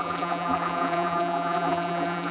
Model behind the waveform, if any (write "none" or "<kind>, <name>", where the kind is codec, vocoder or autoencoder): vocoder, BigVGAN v2